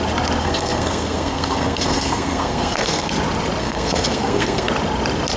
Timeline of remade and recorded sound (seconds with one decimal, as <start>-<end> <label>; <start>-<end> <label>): 0.0-0.4 recorded; 0.4-3.1 remade; 3.1-3.6 recorded; 3.6-4.7 remade; 4.7-5.4 recorded